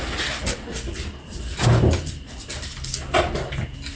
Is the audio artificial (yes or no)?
no